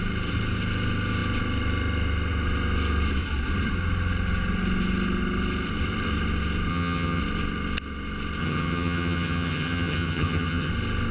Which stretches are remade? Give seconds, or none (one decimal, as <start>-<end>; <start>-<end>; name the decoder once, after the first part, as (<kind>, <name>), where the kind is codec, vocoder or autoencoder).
6.7-7.2 (vocoder, HiFi-GAN); 8.4-10.7